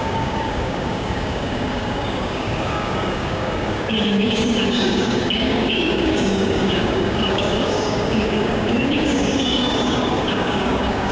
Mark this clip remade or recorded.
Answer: remade